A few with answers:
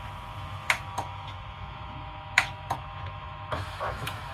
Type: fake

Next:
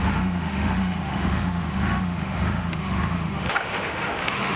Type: fake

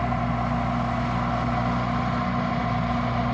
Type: real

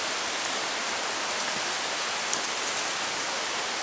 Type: real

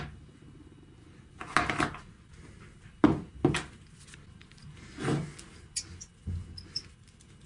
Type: real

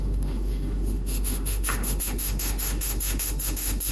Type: fake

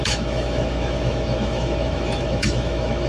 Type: fake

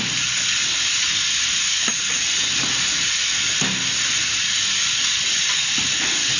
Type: real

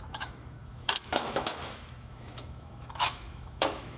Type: fake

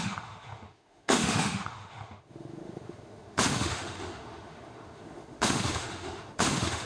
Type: fake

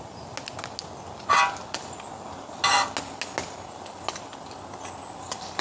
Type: real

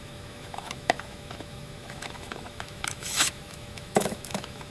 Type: fake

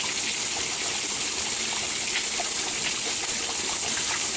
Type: real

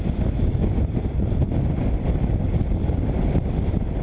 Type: real